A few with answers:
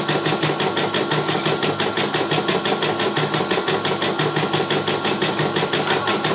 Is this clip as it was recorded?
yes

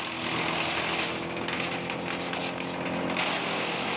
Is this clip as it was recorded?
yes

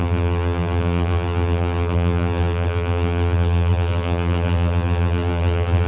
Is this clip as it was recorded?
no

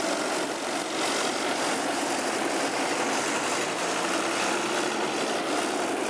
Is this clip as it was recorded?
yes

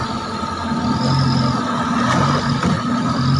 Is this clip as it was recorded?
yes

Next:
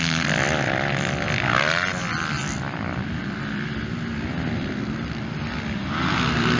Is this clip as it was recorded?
yes